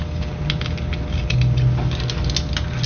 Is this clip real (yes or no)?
yes